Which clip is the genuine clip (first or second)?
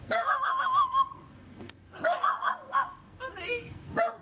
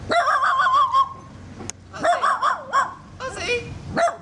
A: second